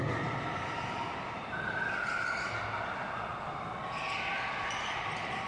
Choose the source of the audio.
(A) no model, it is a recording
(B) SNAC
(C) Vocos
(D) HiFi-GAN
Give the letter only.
A